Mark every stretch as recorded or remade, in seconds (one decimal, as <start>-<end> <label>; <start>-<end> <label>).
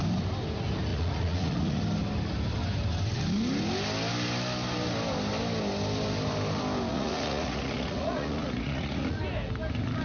0.0-0.9 recorded; 0.9-1.8 remade; 1.8-6.9 recorded; 6.9-9.2 remade; 9.2-10.0 recorded